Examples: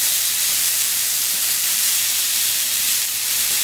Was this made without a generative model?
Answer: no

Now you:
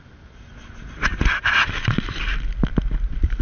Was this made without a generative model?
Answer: yes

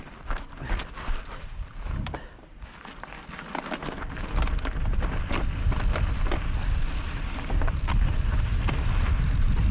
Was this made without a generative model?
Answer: yes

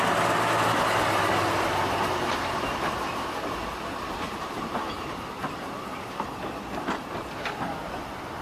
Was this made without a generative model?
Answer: yes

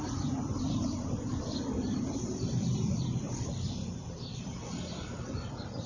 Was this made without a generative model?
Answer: no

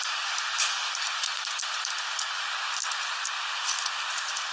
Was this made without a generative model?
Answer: no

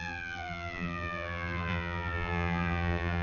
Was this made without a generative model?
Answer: no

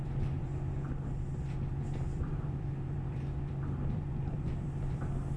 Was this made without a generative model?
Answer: no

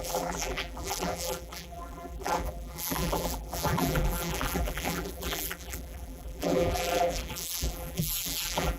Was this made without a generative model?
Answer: no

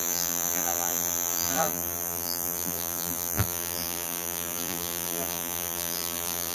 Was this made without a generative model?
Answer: no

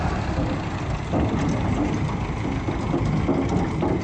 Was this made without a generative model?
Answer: yes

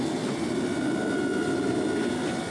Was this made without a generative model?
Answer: yes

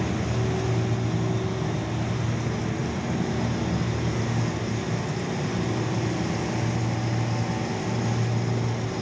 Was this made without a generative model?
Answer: yes